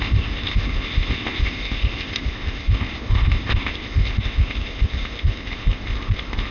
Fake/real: fake